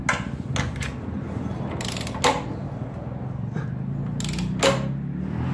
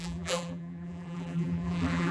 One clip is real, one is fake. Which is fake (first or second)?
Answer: second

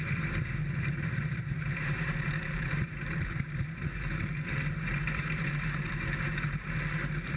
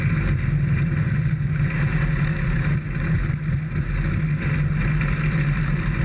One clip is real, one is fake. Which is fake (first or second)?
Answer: first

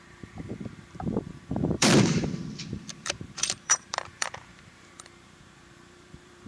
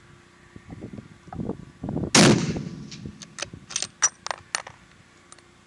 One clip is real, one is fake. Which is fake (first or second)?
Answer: first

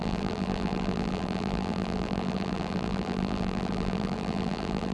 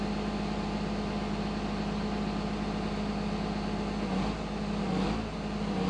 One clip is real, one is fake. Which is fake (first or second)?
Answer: first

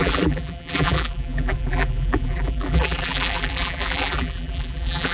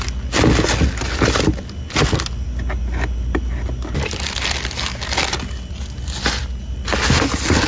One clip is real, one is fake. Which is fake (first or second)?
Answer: first